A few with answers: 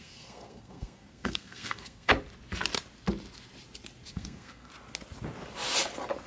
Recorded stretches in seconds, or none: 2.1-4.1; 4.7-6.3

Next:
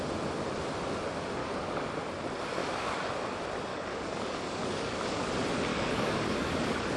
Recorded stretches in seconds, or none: 0.0-1.4; 1.9-2.6; 3.1-3.7; 5.3-5.7